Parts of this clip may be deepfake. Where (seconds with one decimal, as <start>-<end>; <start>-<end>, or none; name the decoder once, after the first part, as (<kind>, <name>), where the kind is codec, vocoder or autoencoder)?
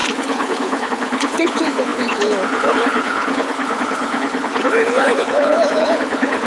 0.0-6.5 (codec, HILCodec)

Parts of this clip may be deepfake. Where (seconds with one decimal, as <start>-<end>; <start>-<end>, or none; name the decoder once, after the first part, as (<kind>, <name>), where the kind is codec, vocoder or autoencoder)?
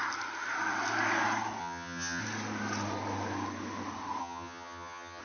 1.6-2.2 (vocoder, HiFi-GAN); 4.2-5.2